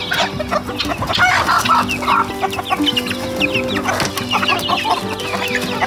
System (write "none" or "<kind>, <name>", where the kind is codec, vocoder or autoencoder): none